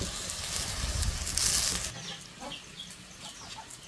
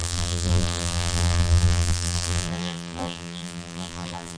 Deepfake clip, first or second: second